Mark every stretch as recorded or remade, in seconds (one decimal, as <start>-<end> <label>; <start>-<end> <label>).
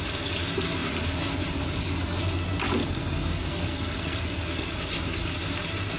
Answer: 0.0-2.8 recorded; 2.8-4.7 remade; 4.7-6.0 recorded